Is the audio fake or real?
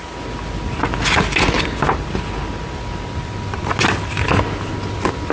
real